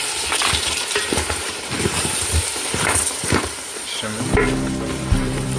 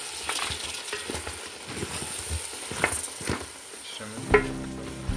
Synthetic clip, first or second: first